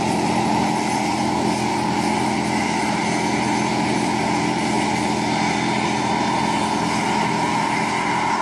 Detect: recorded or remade recorded